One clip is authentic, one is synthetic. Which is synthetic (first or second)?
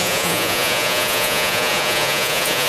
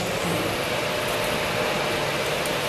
first